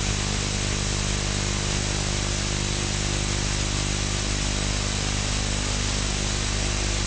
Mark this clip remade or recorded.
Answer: recorded